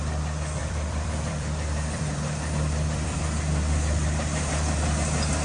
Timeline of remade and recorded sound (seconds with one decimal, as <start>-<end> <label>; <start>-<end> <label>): 0.0-0.6 recorded; 0.6-3.2 remade; 3.2-5.4 recorded